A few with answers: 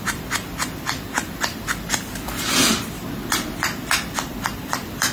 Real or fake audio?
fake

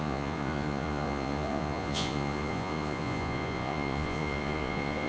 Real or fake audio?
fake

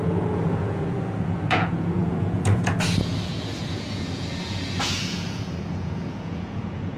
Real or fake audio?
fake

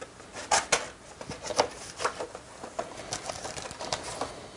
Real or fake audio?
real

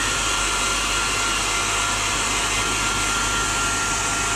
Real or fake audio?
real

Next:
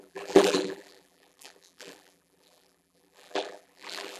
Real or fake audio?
fake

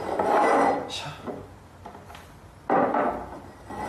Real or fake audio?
real